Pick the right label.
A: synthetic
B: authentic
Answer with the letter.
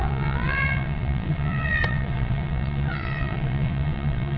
A